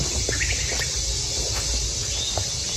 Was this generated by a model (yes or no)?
no